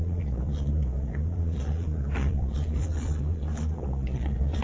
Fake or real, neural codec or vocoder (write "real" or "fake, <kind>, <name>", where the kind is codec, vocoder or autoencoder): fake, vocoder, Vocos